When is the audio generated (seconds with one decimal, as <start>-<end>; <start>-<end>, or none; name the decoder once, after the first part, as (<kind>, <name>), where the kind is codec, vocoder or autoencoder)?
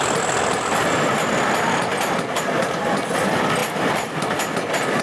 1.9-2.8 (vocoder, BigVGAN v2)